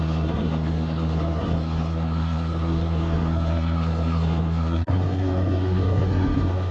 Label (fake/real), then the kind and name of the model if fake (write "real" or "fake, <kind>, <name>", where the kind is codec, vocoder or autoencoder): fake, codec, SNAC